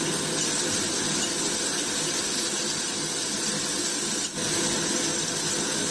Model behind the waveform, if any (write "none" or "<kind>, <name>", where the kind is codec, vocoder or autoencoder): none